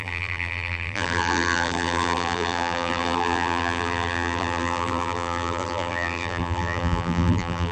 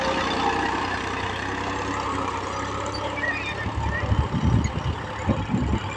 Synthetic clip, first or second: first